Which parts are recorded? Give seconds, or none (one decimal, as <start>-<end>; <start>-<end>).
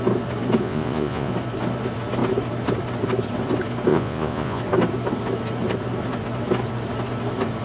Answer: 0.0-0.6; 1.3-3.9; 4.6-7.6